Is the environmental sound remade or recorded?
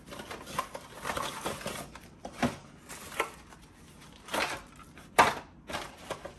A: recorded